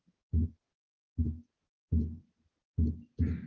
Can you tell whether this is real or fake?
real